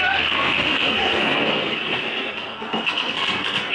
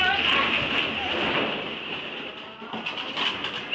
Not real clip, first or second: first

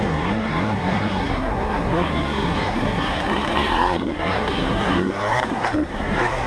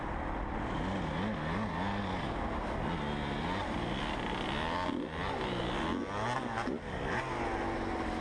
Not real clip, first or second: first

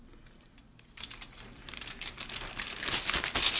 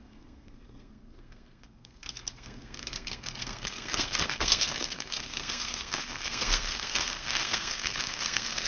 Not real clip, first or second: second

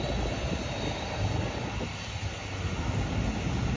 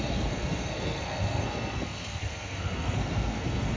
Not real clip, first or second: second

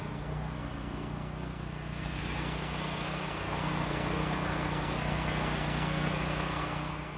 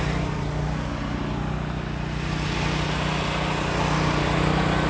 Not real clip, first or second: first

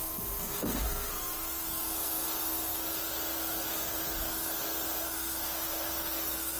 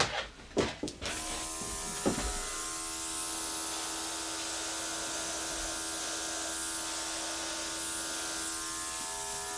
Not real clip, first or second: first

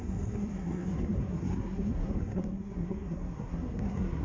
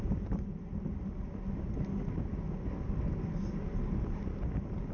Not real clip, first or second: first